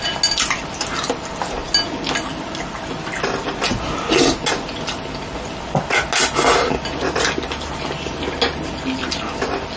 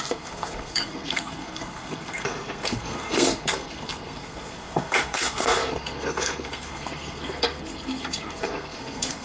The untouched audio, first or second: first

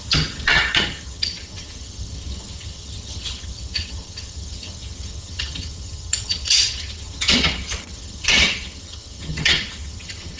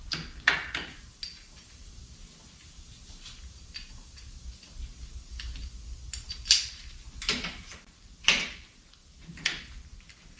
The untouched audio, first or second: second